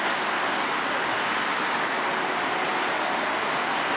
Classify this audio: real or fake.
real